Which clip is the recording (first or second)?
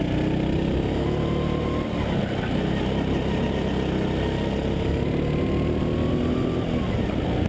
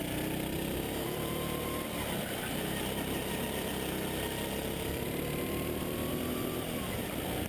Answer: first